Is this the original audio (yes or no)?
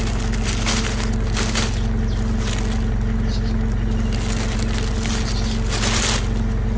yes